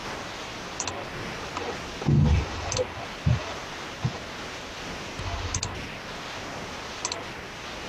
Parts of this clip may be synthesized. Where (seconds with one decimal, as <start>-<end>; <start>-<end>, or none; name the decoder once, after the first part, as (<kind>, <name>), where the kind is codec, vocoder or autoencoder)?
none